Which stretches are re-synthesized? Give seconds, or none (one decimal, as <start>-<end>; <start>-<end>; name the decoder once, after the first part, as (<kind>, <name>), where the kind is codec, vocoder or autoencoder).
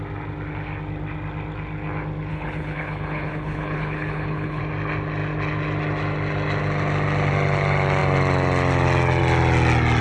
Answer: 2.3-4.6 (codec, HILCodec)